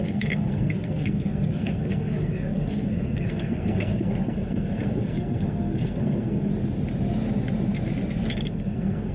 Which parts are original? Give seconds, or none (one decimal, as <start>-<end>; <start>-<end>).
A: 6.5-8.3